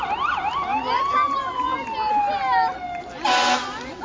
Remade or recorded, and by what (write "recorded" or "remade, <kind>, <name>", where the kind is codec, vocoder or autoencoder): recorded